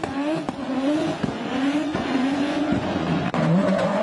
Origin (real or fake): fake